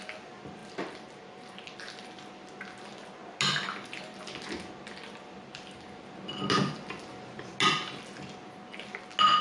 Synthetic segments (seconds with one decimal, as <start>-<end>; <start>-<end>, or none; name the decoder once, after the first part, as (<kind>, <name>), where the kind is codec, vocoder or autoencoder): none